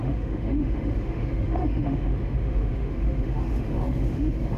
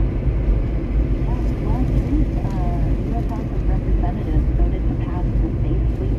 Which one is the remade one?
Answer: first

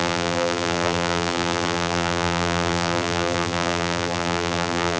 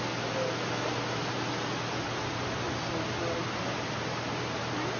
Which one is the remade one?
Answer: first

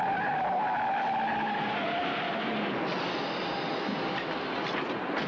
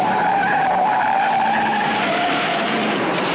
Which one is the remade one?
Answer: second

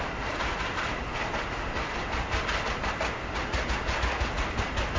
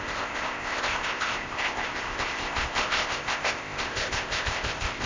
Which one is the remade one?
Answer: second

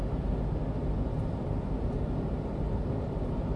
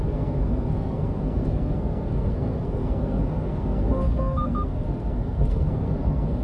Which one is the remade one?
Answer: second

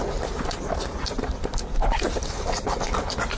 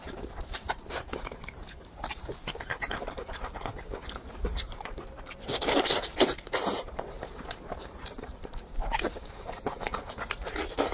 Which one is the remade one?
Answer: second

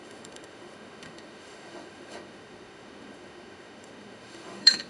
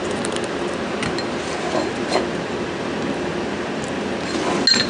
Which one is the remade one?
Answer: first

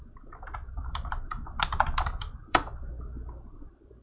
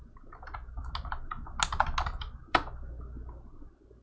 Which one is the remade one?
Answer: first